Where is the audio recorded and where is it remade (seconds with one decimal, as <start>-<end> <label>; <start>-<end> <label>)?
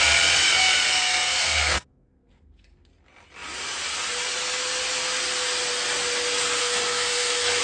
0.0-0.9 recorded; 0.9-2.9 remade; 2.9-6.6 recorded; 6.6-7.6 remade